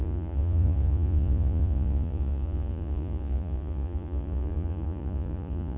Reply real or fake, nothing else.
fake